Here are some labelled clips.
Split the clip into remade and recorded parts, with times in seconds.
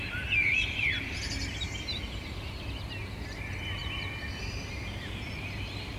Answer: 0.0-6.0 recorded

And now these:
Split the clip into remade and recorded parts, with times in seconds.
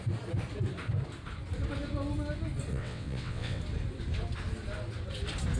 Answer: 0.0-2.7 recorded; 2.7-3.6 remade; 3.6-5.6 recorded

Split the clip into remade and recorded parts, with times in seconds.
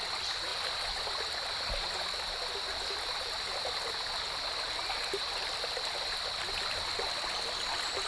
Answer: 0.0-8.1 recorded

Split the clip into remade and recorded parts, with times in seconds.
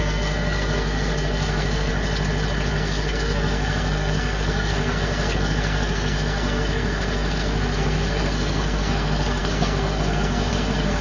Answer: 0.0-1.9 remade; 1.9-2.7 recorded; 2.7-11.0 remade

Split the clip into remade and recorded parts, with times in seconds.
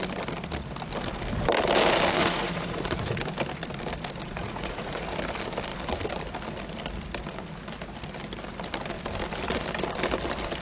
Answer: 0.0-2.2 recorded; 2.2-3.2 remade; 3.2-4.2 recorded; 4.2-5.0 remade; 5.0-10.6 recorded